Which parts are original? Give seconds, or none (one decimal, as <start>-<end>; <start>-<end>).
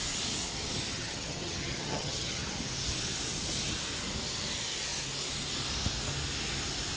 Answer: 0.0-0.9; 2.5-7.0